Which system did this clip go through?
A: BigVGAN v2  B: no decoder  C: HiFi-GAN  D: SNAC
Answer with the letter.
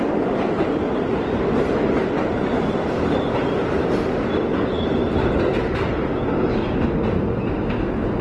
B